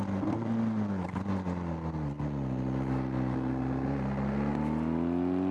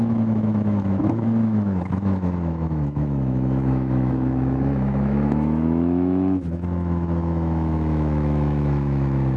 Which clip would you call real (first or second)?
first